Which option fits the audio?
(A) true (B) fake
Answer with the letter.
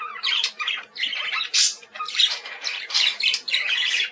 B